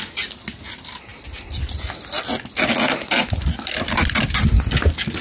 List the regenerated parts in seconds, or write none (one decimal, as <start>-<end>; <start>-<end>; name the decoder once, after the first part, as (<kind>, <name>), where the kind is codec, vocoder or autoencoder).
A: none